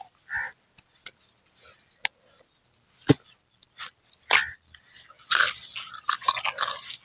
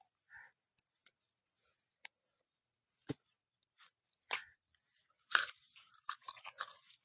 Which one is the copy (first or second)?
second